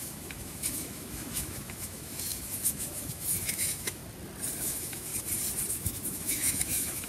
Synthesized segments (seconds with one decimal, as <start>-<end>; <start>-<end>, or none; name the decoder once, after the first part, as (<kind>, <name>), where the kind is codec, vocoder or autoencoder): 0.0-4.0 (autoencoder, DAC-VAE); 4.6-5.1; 5.7-7.1